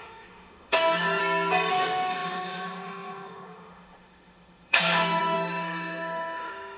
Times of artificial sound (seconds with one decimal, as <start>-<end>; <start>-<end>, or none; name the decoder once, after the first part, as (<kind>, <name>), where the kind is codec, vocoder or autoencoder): 0.0-1.2 (autoencoder, DAC-VAE); 1.7-6.8